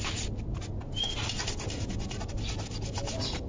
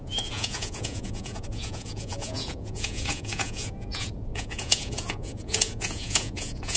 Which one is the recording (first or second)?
first